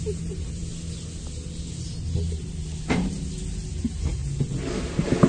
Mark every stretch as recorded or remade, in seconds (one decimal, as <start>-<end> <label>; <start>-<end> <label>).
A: 0.0-0.6 remade; 0.6-3.8 recorded; 3.8-4.2 remade; 4.2-4.8 recorded; 4.8-5.3 remade